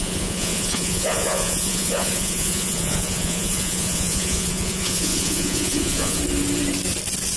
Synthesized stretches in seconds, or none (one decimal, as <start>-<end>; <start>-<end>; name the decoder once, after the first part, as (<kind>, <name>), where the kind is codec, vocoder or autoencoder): 0.0-6.2 (vocoder, Vocos)